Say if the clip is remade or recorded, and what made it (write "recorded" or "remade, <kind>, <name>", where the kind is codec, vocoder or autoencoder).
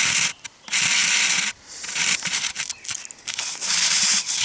recorded